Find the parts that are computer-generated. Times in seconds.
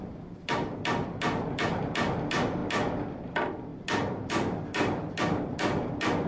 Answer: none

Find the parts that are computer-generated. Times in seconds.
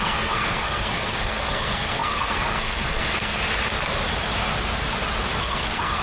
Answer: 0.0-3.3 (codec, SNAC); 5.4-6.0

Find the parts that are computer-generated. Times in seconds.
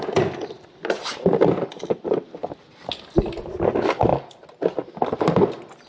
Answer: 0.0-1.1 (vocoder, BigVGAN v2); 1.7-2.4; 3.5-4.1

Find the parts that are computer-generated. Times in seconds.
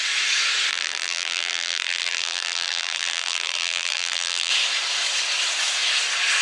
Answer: 0.7-4.5 (vocoder, BigVGAN v2)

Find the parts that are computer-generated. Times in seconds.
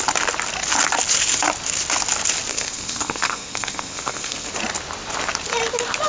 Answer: 2.5-4.5 (codec, SNAC)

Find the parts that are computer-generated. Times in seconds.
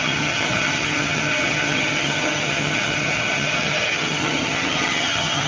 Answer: 0.0-5.5 (vocoder, HiFi-GAN)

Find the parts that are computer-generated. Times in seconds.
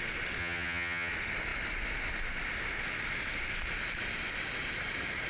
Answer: 0.4-1.1 (vocoder, HiFi-GAN)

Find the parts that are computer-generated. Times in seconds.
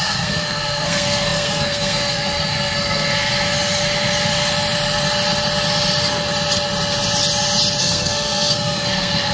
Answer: 0.0-3.3 (codec, SNAC); 7.8-9.3